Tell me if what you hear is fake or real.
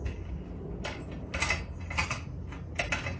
real